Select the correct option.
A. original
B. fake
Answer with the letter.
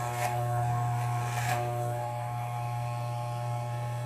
B